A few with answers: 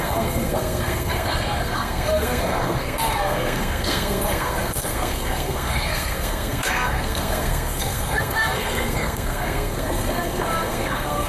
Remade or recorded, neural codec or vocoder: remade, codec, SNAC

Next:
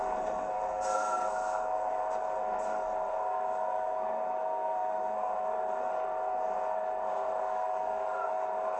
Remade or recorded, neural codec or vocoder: remade, codec, SNAC